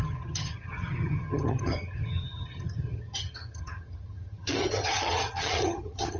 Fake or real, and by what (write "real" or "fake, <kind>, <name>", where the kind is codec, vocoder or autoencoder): fake, vocoder, HiFi-GAN